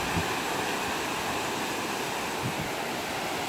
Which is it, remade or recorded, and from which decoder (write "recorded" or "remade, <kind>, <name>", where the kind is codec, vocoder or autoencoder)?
recorded